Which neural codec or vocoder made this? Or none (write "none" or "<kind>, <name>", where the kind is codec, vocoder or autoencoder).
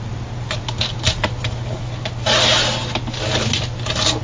none